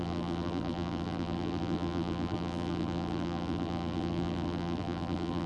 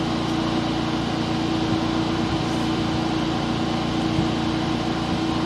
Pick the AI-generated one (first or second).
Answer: first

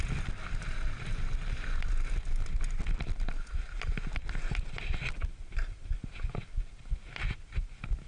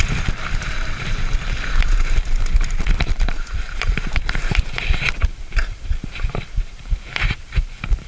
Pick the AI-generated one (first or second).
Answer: second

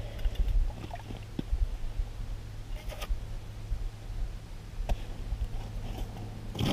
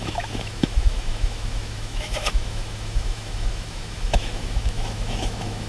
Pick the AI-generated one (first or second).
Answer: second